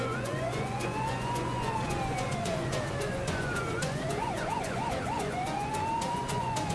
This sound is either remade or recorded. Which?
remade